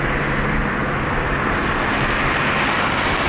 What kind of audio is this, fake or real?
real